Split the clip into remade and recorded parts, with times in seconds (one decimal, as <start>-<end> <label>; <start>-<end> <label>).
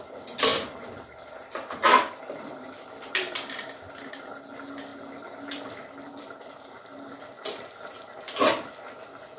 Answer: 0.0-0.5 recorded; 0.5-4.3 remade; 4.3-4.9 recorded; 4.9-7.1 remade; 7.1-9.4 recorded